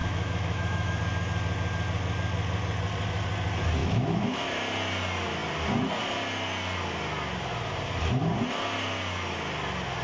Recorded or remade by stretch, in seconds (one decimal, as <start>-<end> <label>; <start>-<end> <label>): 0.0-1.0 remade; 1.0-3.8 recorded; 3.8-4.6 remade; 4.6-10.0 recorded